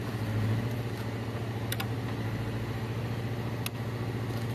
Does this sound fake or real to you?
real